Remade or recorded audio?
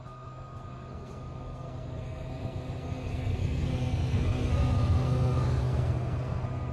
remade